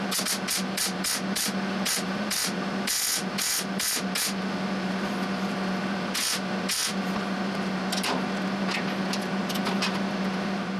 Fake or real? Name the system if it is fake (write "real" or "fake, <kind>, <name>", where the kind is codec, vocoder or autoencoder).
real